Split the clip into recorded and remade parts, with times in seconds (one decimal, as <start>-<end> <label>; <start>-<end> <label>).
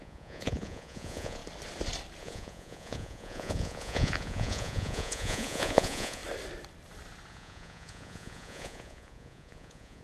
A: 0.0-1.4 remade; 1.4-2.2 recorded; 2.2-6.2 remade; 6.2-7.3 recorded; 7.3-10.0 remade